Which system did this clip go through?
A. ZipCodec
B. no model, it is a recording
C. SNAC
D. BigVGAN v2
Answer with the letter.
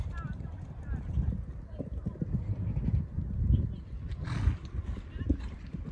D